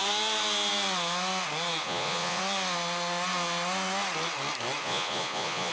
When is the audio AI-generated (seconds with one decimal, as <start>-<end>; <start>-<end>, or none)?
1.8-2.4; 4.8-5.7